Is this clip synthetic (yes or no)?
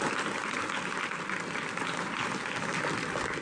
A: no